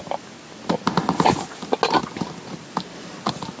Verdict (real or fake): real